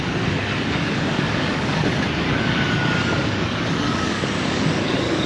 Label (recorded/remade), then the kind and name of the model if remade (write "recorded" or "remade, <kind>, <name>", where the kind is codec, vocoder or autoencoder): remade, codec, DAC